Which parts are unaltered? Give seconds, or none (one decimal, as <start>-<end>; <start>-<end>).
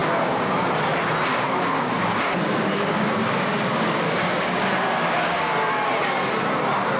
0.5-1.3; 5.5-7.0